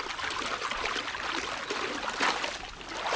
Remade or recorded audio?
recorded